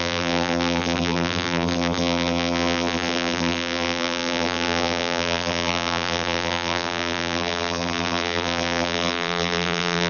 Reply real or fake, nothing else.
fake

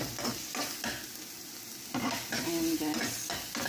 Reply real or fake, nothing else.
real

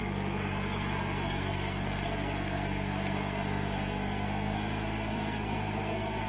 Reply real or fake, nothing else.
fake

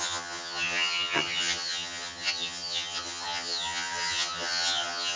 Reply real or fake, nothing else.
fake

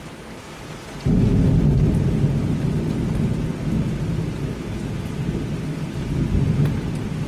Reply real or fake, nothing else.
real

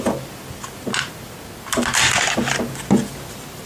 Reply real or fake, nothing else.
real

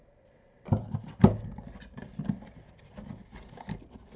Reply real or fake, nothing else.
real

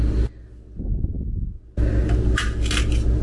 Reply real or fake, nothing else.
real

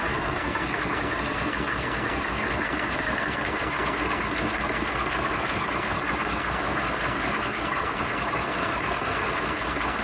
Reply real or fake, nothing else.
fake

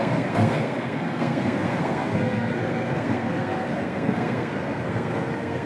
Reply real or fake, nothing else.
fake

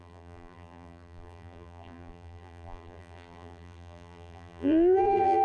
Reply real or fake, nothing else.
fake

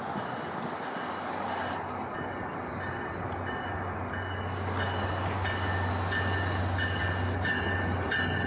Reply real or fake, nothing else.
real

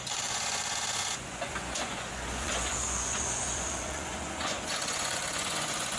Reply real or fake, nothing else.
fake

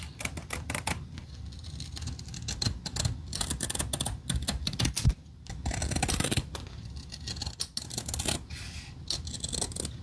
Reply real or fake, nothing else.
real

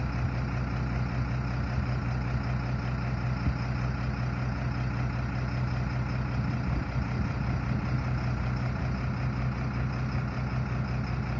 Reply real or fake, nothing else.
real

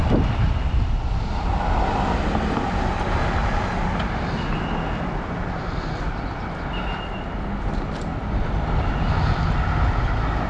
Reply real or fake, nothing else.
real